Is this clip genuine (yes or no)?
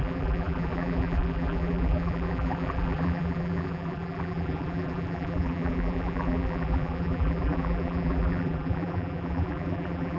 no